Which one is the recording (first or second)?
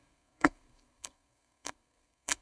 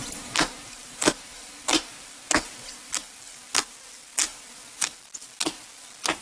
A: second